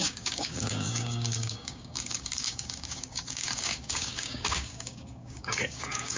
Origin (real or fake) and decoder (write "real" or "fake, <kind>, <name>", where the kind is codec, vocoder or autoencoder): fake, codec, DAC